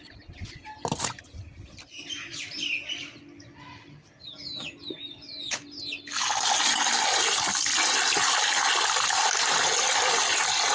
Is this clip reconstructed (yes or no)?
no